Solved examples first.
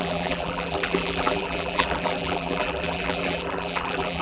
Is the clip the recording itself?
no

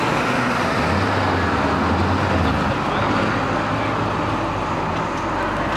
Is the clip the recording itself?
yes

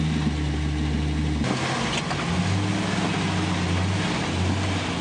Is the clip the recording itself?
yes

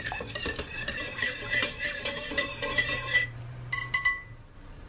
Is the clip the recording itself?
no